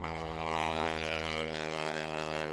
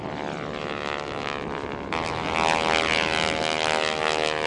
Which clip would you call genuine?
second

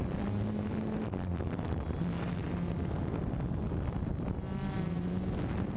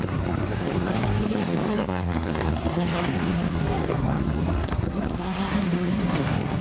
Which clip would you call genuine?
first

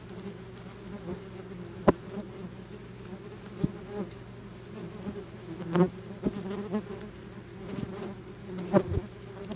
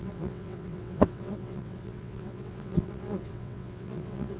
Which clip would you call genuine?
first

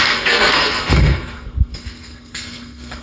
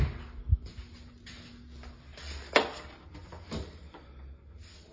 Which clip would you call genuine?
second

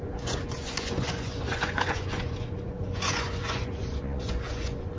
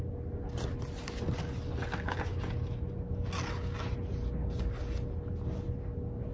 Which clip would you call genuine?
second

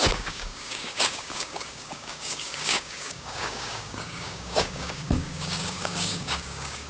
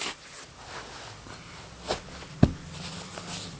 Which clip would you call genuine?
second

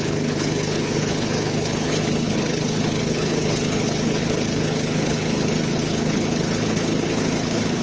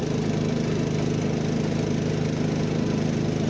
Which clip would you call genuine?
second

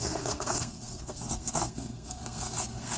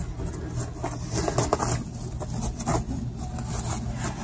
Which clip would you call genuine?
second